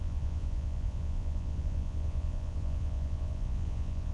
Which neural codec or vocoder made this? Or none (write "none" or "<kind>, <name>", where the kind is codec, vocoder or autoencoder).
vocoder, Vocos